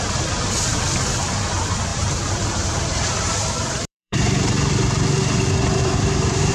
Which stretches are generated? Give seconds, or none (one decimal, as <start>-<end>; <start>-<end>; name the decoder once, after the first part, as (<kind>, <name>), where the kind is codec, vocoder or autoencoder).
1.9-4.5 (vocoder, BigVGAN v2); 5.8-6.5

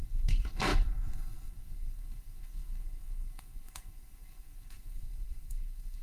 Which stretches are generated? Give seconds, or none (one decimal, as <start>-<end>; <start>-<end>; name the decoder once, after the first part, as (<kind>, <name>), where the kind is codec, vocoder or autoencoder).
0.0-6.0 (codec, SNAC)

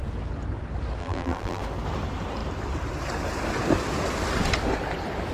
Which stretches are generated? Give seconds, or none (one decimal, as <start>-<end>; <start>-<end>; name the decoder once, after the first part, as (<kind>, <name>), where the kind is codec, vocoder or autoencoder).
1.0-1.6 (vocoder, BigVGAN v2)

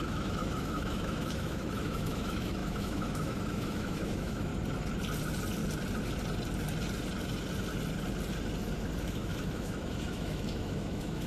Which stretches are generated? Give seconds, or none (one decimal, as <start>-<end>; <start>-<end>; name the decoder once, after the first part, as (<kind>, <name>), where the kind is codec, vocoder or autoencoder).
0.0-4.5 (autoencoder, DAC-VAE); 9.0-11.3

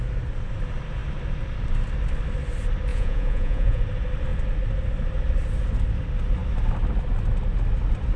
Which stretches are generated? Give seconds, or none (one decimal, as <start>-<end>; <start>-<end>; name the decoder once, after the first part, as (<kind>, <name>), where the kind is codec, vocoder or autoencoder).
2.9-3.8 (vocoder, Vocos)